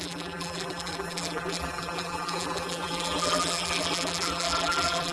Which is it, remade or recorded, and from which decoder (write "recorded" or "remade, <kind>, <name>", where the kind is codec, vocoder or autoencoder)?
remade, vocoder, BigVGAN v2